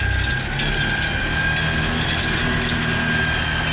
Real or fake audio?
real